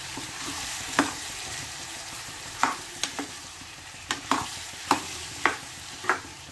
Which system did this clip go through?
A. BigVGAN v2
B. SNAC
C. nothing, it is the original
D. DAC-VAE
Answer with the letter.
A